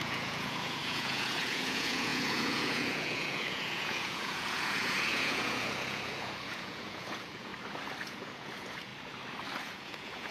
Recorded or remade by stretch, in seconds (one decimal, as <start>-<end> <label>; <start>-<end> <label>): 0.0-7.5 remade; 7.5-8.0 recorded; 8.0-8.9 remade; 8.9-9.6 recorded; 9.6-10.3 remade